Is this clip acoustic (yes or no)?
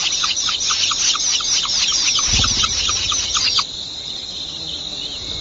yes